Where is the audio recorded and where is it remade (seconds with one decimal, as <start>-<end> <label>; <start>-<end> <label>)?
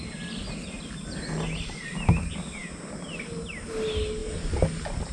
0.0-5.1 recorded